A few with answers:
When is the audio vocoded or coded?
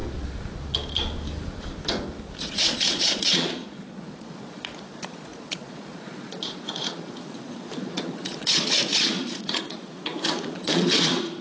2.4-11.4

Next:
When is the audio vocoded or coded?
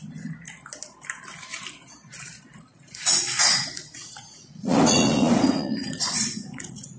2.7-7.0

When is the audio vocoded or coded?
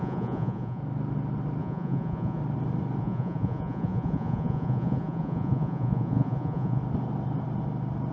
0.0-0.8; 1.6-2.4; 3.0-6.8